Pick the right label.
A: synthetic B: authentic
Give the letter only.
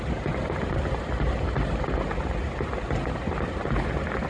B